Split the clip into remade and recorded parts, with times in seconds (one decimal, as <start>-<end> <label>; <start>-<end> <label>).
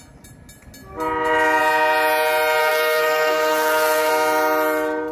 0.0-2.6 recorded; 2.6-4.1 remade; 4.1-5.1 recorded